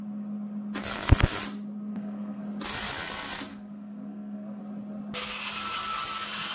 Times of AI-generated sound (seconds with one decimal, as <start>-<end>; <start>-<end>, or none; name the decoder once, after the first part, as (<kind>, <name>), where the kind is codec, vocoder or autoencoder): 1.9-2.4 (codec, SNAC); 3.5-4.6

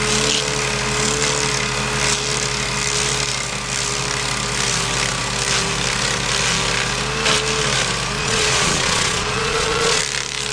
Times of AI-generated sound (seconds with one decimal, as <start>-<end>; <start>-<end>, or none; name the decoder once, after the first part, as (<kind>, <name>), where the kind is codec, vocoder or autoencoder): 8.2-10.0 (vocoder, Vocos)

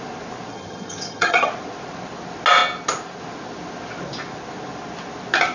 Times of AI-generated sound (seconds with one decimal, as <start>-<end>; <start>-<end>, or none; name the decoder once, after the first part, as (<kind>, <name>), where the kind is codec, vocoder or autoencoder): 0.5-1.5 (vocoder, HiFi-GAN)

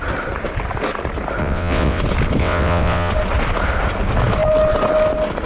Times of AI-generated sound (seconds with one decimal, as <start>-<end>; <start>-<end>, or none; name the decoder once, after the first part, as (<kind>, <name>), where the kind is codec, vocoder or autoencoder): 1.4-2.0 (vocoder, WaveNeXt); 2.4-3.1

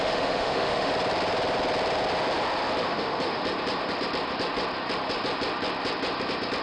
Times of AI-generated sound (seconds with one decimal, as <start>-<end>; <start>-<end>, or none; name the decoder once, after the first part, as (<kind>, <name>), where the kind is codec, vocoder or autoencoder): 0.0-0.9 (autoencoder, DAC-VAE); 2.8-3.4

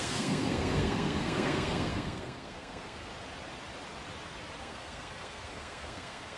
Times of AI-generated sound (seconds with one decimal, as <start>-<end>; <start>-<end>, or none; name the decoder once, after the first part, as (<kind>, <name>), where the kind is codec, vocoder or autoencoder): 0.0-3.1 (codec, SNAC); 4.6-6.4

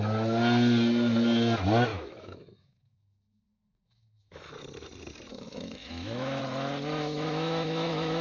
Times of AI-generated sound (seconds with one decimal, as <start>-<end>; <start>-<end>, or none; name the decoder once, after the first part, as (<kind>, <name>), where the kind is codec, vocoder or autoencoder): 1.9-4.5 (autoencoder, DAC-VAE); 5.3-6.4; 7.0-8.2

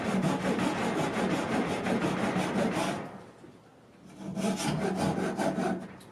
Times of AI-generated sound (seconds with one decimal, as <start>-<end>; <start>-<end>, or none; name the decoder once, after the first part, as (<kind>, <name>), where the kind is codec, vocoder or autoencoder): none